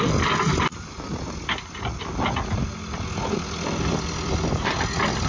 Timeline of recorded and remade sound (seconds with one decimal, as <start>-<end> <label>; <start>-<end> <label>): 0.0-5.3 recorded

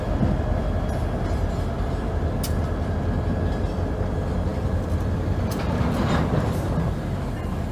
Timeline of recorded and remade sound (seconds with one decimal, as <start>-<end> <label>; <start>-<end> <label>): 0.0-4.5 recorded; 4.5-6.3 remade; 6.3-7.7 recorded

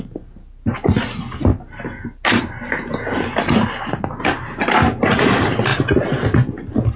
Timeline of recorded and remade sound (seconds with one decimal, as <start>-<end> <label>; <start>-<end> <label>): 0.0-7.0 recorded

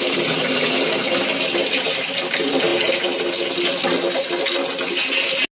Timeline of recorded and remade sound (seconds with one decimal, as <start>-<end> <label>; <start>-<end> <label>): 0.0-5.5 recorded

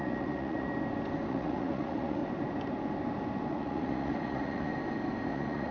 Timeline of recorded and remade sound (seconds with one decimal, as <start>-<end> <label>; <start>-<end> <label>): 0.0-0.7 remade; 0.7-1.3 recorded; 1.3-2.2 remade; 2.2-3.5 recorded; 3.5-4.7 remade; 4.7-5.3 recorded; 5.3-5.7 remade